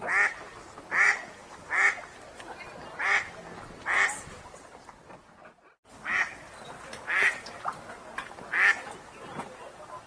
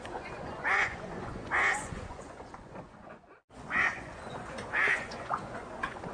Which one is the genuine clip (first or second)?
first